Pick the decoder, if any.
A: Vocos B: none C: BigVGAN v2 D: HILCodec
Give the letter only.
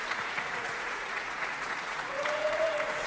A